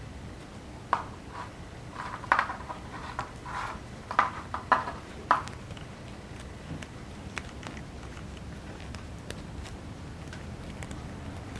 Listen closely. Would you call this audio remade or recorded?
remade